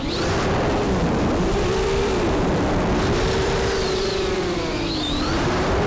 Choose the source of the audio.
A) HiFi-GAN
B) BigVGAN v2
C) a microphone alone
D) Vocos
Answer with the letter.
B